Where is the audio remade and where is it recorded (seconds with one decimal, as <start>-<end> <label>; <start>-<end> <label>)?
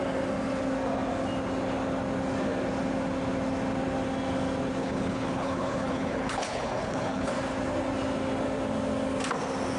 0.0-4.8 recorded; 4.8-7.3 remade; 7.3-9.8 recorded